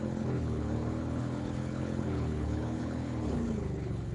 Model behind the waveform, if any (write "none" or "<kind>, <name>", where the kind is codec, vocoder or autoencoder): codec, HILCodec